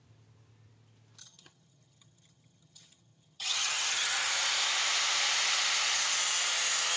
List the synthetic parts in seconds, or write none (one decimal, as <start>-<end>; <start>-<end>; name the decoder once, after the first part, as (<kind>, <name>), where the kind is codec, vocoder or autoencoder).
1.2-4.3 (vocoder, HiFi-GAN)